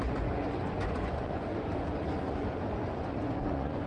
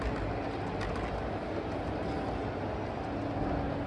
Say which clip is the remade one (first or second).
first